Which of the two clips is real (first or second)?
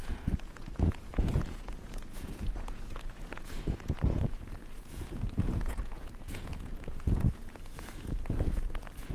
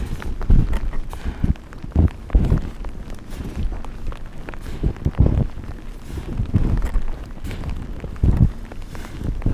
second